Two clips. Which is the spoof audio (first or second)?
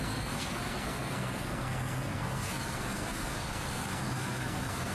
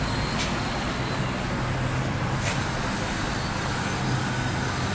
first